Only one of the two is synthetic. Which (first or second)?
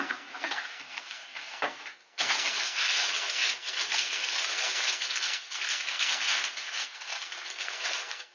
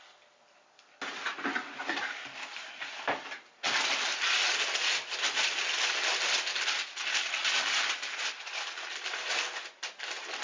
first